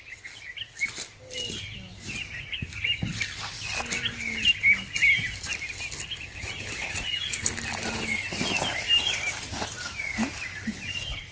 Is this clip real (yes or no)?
yes